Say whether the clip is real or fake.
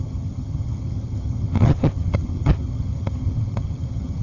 fake